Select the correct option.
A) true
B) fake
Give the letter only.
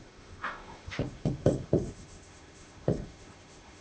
B